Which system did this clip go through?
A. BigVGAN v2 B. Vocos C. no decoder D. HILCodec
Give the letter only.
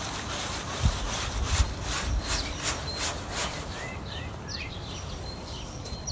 A